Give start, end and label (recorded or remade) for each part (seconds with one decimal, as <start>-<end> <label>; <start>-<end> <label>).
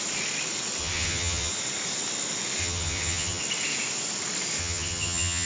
0.0-0.8 recorded; 0.8-1.5 remade; 1.5-2.6 recorded; 2.6-3.4 remade; 3.4-4.6 recorded; 4.6-5.5 remade